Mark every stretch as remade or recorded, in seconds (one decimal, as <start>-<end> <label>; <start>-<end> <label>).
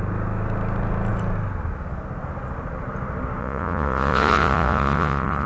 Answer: 0.0-3.4 recorded; 3.4-5.5 remade